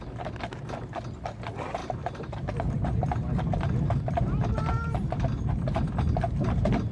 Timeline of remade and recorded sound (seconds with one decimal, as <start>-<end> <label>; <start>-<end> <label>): 0.0-1.8 recorded; 1.8-5.9 remade; 5.9-6.9 recorded